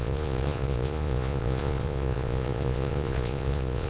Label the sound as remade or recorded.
remade